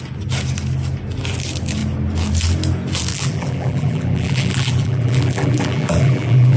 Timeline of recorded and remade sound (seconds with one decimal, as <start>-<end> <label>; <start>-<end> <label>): 0.0-3.1 recorded; 3.1-6.6 remade